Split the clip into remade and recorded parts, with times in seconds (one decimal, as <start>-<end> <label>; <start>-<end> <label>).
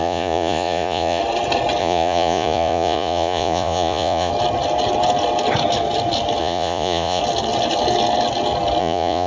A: 0.0-1.2 remade; 1.2-1.8 recorded; 1.8-4.3 remade; 4.3-6.4 recorded; 6.4-7.2 remade; 7.2-8.8 recorded; 8.8-9.3 remade